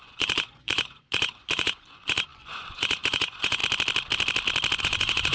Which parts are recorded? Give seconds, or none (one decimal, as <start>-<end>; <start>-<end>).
3.6-4.8